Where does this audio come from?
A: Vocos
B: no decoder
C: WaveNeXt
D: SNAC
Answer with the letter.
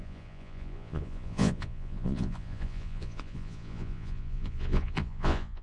A